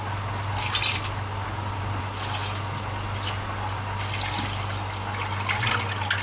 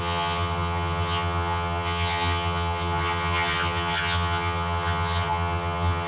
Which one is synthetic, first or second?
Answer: second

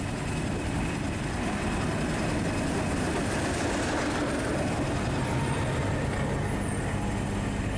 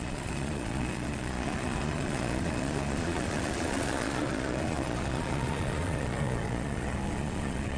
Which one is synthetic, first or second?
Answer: second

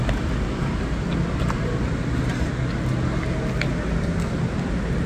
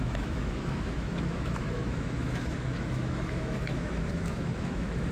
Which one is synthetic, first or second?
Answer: second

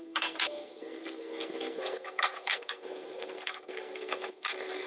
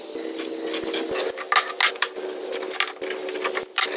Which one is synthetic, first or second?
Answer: first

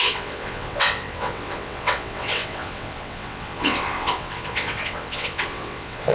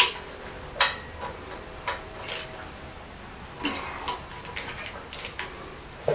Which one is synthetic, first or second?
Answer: first